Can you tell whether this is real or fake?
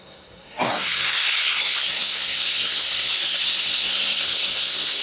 fake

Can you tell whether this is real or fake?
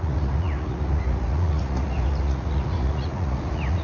fake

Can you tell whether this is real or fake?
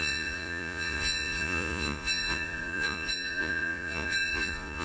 fake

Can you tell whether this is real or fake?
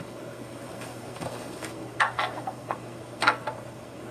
fake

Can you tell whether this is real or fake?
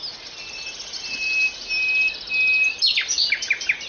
real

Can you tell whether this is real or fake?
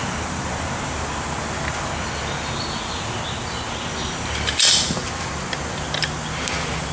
real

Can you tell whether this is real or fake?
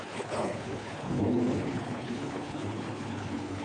fake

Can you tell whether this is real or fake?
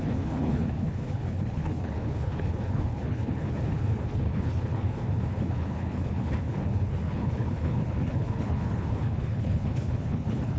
fake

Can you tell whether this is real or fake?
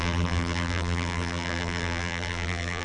fake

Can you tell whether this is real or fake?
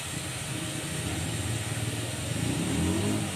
real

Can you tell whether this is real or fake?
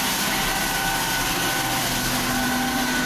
real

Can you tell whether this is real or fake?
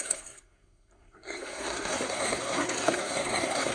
fake